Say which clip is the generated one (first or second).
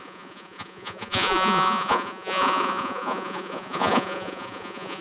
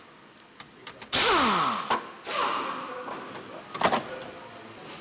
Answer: first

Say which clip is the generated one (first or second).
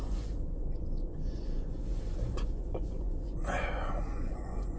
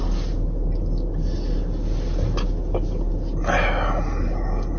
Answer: first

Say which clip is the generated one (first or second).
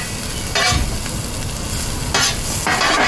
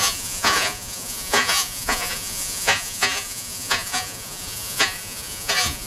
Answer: second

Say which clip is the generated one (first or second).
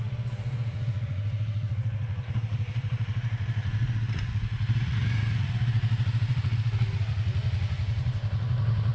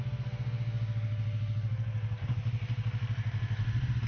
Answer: first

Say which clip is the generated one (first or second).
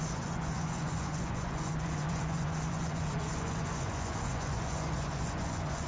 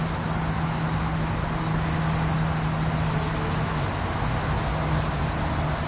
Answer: first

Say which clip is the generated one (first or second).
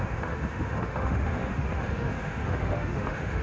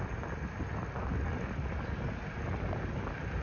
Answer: first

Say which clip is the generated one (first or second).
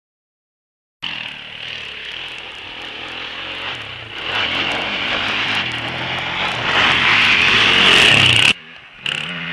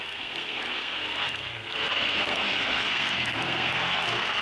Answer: second